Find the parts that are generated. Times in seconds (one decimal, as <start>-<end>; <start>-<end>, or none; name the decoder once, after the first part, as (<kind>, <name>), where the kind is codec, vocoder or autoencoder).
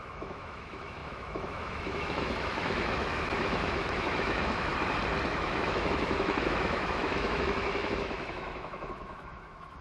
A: 0.0-4.7 (autoencoder, DAC-VAE); 5.3-9.8